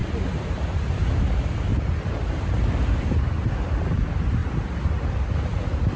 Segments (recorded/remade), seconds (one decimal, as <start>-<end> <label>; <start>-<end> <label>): 0.0-1.1 remade; 1.1-1.7 recorded; 1.7-3.5 remade; 3.5-4.4 recorded; 4.4-5.1 remade; 5.1-6.0 recorded